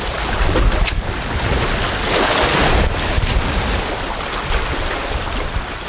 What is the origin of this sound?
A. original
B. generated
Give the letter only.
A